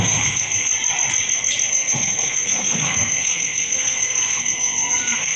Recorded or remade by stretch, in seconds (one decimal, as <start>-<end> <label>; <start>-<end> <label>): 0.0-0.7 remade; 0.7-1.7 recorded; 1.7-5.4 remade